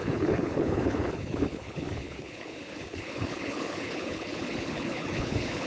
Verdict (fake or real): fake